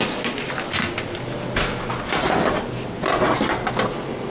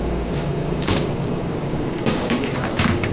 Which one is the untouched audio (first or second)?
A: first